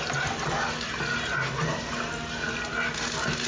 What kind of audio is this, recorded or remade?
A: recorded